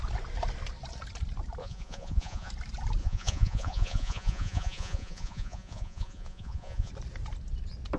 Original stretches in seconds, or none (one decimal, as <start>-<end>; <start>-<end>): 0.0-1.6; 2.5-3.0; 6.9-8.0